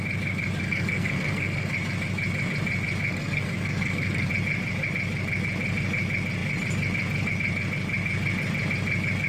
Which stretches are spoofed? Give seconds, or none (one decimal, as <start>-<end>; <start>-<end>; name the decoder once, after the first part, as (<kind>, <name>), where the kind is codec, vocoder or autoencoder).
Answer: 0.6-1.7 (codec, SNAC); 3.1-4.3